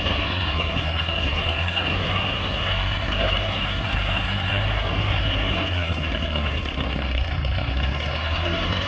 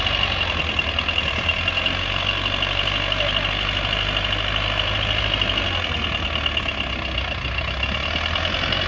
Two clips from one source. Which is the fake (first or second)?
first